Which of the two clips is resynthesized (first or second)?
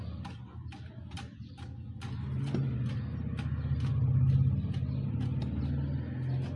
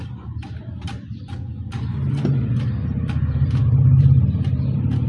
second